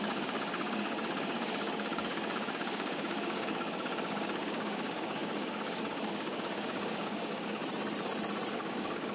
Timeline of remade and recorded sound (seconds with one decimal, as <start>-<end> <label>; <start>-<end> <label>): 0.0-7.6 remade; 7.6-8.5 recorded; 8.5-9.1 remade